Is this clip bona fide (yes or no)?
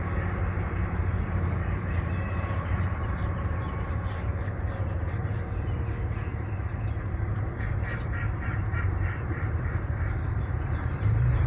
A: no